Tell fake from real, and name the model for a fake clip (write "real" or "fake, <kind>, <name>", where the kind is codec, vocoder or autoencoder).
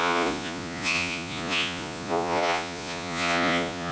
fake, vocoder, Vocos